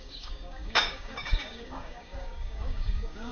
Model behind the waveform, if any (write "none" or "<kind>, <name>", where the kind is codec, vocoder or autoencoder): codec, DAC